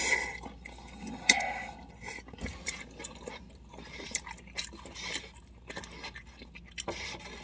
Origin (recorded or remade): recorded